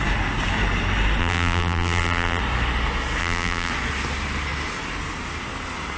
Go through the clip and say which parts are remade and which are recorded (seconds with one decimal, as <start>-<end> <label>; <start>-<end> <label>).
0.0-1.2 recorded; 1.2-2.4 remade; 2.4-3.2 recorded; 3.2-3.7 remade; 3.7-6.0 recorded